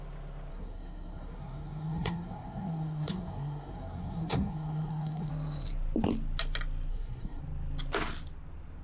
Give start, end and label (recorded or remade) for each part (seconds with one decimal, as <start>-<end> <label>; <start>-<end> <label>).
0.0-0.5 recorded; 0.5-5.3 remade; 5.3-6.9 recorded; 6.9-7.4 remade; 7.4-8.8 recorded